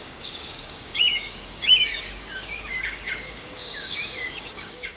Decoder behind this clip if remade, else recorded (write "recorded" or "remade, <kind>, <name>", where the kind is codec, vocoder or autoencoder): remade, codec, DAC